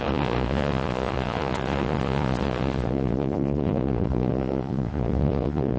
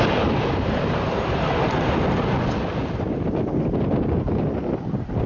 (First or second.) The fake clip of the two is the first